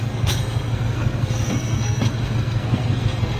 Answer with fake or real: fake